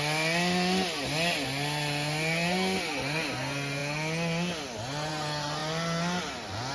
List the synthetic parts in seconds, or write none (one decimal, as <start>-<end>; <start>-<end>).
none